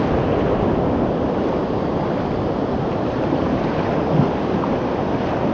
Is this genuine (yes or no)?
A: yes